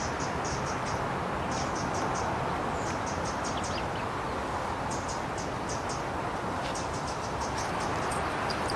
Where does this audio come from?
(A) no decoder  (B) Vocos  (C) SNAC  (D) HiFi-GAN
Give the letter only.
A